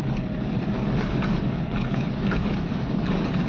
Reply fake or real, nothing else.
fake